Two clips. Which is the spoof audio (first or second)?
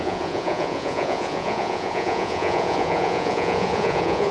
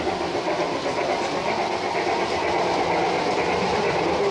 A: first